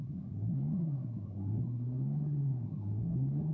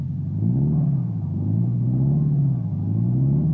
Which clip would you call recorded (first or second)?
second